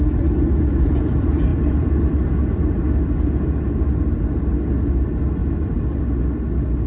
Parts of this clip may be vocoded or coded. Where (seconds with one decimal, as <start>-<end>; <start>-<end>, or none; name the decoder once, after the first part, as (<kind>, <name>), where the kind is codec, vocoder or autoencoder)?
1.5-2.8 (vocoder, BigVGAN v2); 5.4-6.0